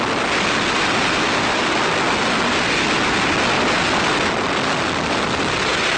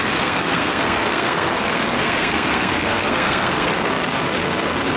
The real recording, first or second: first